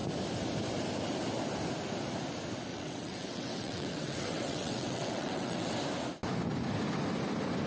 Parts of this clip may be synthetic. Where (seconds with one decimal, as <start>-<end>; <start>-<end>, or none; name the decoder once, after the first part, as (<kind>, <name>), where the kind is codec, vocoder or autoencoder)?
2.7-5.7 (vocoder, WaveNeXt)